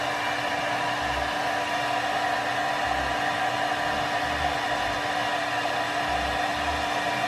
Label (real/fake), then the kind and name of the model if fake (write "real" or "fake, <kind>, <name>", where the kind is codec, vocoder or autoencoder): real